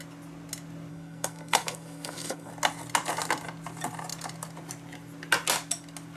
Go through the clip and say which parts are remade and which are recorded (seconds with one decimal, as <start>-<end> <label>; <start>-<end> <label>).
0.0-0.9 recorded; 0.9-2.5 remade; 2.5-6.2 recorded